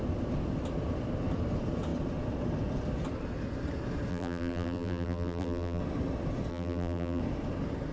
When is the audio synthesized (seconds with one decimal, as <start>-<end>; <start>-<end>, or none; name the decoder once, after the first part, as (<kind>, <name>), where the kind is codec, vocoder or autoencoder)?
4.1-5.8 (vocoder, BigVGAN v2); 6.5-7.2